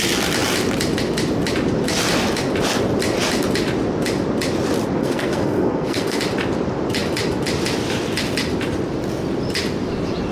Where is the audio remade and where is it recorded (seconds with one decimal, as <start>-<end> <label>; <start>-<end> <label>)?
0.0-5.0 recorded; 5.0-6.2 remade; 6.2-10.3 recorded